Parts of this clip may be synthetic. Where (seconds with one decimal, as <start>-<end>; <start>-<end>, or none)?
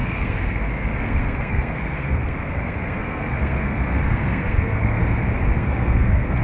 0.0-5.0; 5.6-6.4